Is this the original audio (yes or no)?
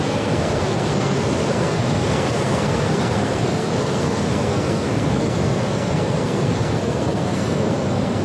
no